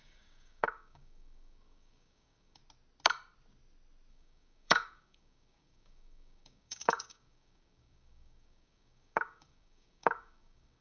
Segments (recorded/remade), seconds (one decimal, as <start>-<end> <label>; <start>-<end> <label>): 0.0-2.6 remade; 2.6-4.1 recorded; 4.1-10.8 remade